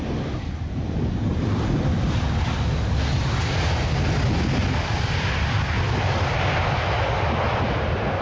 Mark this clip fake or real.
real